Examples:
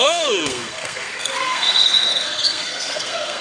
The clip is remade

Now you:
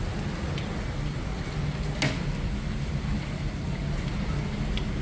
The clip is recorded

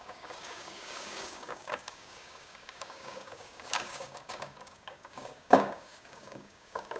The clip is remade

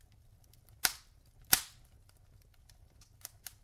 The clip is recorded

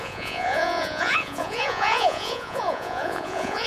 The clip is remade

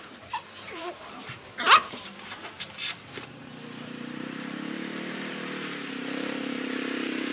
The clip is remade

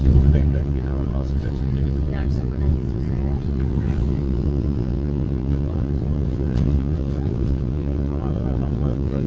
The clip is remade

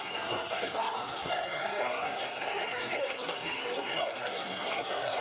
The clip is remade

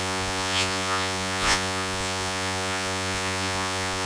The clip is remade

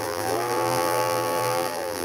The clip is remade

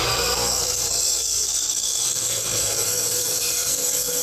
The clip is remade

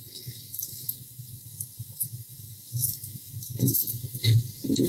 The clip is remade